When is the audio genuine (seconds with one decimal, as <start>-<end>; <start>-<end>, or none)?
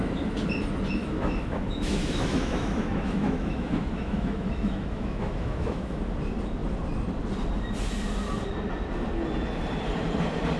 0.0-1.0; 6.0-10.6